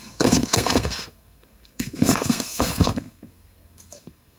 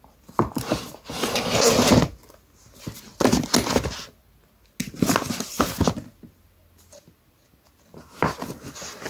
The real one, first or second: second